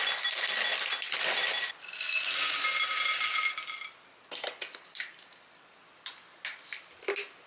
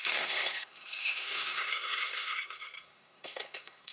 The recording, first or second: first